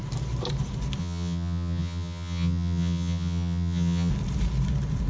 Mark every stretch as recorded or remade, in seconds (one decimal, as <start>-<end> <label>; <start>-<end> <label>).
0.0-1.0 recorded; 1.0-4.1 remade; 4.1-5.1 recorded